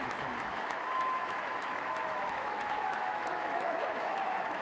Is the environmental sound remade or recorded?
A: remade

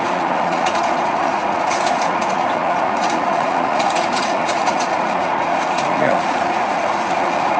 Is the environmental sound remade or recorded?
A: remade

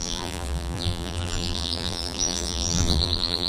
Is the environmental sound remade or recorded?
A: remade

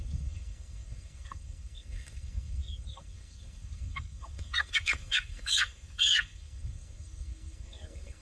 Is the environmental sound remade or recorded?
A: remade